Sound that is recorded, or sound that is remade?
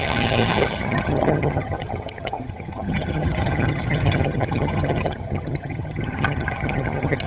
remade